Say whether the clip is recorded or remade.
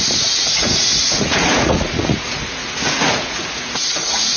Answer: remade